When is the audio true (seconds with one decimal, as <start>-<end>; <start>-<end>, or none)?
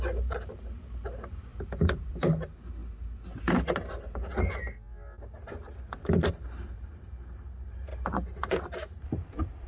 2.8-6.3; 7.9-8.5